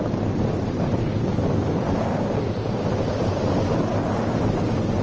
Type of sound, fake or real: real